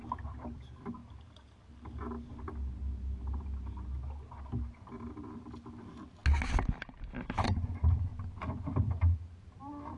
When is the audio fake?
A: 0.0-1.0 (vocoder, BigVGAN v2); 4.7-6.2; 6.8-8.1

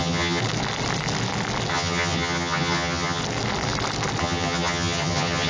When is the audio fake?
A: 0.0-0.4 (vocoder, HiFi-GAN); 1.7-3.2; 4.2-5.5